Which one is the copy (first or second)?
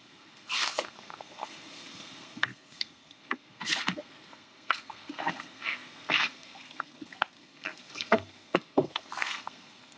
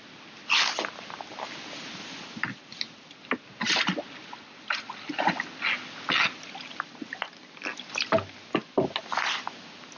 first